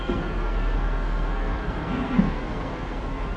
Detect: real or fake fake